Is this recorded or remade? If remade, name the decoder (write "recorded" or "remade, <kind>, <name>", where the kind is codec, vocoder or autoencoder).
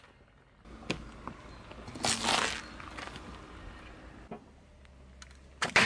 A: recorded